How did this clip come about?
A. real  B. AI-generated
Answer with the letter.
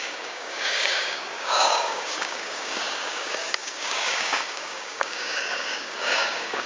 B